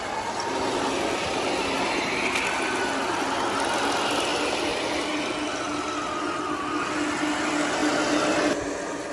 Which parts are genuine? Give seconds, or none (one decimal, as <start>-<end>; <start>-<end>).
0.0-9.1